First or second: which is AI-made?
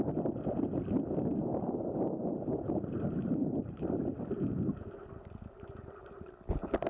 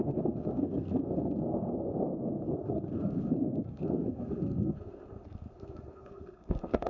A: second